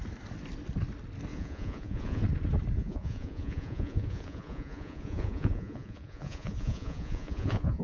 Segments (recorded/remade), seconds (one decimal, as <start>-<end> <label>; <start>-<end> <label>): 0.0-1.3 recorded; 1.3-2.2 remade; 2.2-2.8 recorded; 2.8-7.8 remade